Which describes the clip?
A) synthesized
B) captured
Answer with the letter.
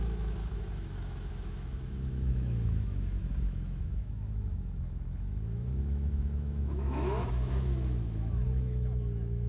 A